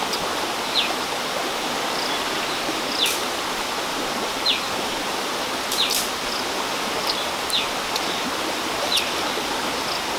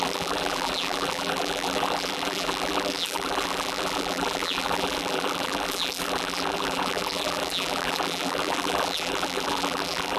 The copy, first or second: second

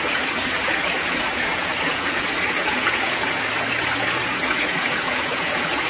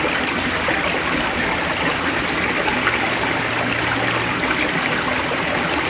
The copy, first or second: first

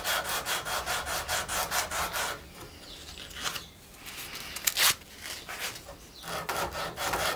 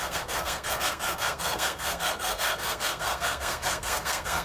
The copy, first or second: second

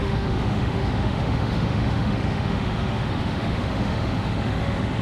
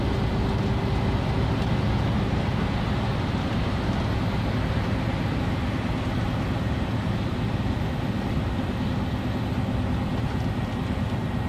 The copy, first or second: first